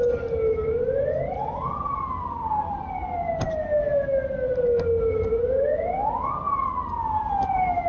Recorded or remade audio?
recorded